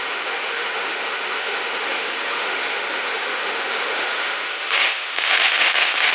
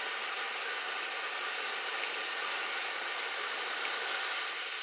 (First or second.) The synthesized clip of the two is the first